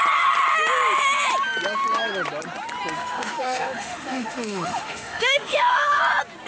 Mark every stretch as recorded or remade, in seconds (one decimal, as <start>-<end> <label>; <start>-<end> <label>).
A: 0.0-3.0 recorded; 3.0-6.0 remade; 6.0-6.5 recorded